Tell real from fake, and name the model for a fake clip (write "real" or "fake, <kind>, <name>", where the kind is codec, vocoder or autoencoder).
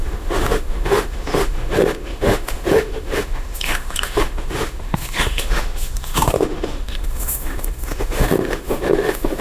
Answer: fake, autoencoder, DAC-VAE